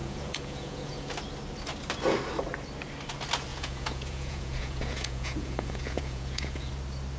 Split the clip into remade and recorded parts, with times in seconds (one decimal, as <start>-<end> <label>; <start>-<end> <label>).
0.0-1.1 remade; 1.1-3.5 recorded; 3.5-6.7 remade; 6.7-7.2 recorded